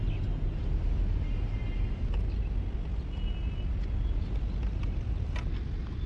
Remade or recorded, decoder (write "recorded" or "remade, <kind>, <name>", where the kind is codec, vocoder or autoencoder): recorded